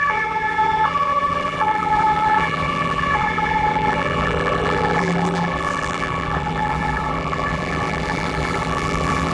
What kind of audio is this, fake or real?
fake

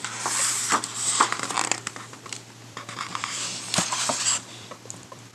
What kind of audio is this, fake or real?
fake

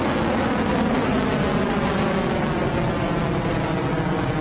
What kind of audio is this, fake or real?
real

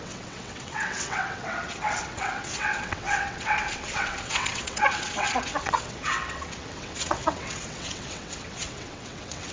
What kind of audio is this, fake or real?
fake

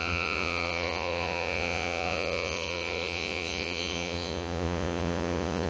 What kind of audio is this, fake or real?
fake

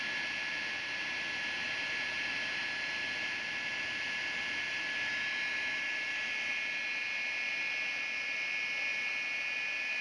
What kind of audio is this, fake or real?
real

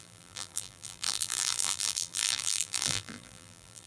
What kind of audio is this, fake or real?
fake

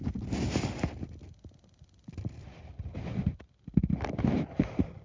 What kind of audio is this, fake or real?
real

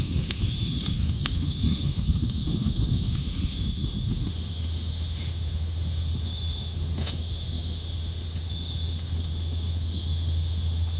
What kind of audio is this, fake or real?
fake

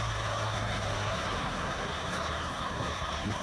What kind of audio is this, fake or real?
fake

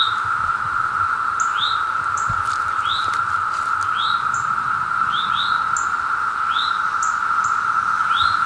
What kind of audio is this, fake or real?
real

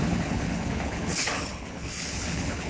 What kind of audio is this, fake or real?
fake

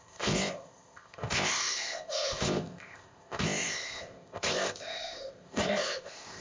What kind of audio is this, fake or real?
fake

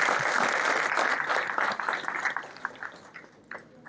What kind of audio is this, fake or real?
real